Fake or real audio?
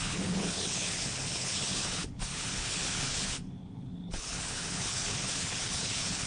fake